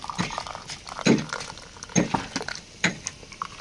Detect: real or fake real